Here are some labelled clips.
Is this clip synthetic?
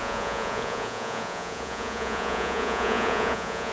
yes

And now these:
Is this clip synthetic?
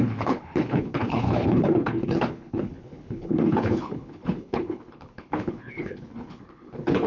yes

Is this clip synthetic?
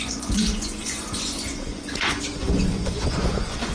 yes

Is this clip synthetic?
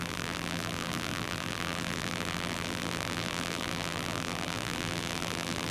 yes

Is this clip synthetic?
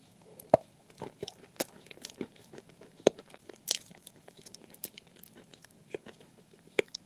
yes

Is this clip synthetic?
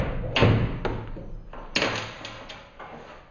no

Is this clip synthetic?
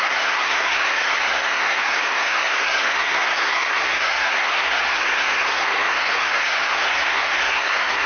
yes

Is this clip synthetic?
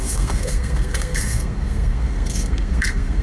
yes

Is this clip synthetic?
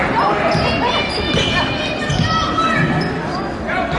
no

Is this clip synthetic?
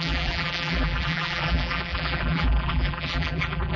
yes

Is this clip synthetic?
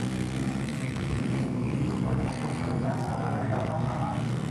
yes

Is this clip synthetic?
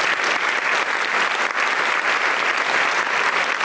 no